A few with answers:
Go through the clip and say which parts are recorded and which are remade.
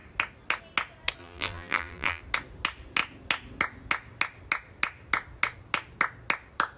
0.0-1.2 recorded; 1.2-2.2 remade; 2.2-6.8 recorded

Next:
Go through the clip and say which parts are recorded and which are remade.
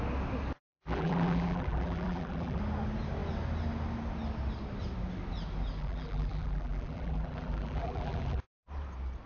0.0-0.7 recorded; 0.7-2.6 remade; 2.6-5.8 recorded; 5.8-8.4 remade; 8.4-9.3 recorded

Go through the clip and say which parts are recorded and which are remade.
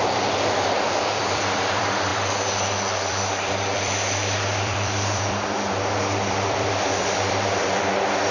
0.0-2.1 remade; 2.1-3.1 recorded; 3.1-8.3 remade